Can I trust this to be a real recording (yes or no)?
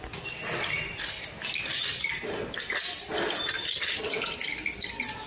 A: yes